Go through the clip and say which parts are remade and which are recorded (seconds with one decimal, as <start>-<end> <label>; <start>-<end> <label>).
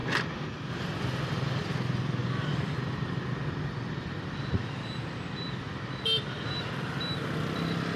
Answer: 0.0-8.0 recorded